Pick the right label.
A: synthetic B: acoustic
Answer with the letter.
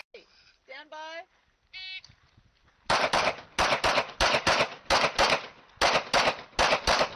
B